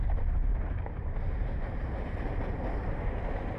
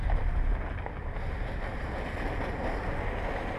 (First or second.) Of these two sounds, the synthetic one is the first